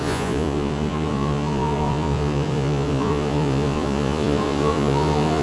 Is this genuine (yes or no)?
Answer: no